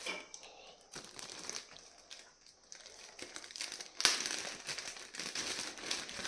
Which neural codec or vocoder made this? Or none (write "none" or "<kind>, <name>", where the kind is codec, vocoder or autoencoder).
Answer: none